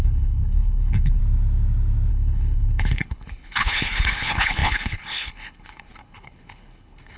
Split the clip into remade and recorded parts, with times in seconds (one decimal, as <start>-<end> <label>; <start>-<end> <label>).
0.0-1.2 remade; 1.2-2.1 recorded; 2.1-7.2 remade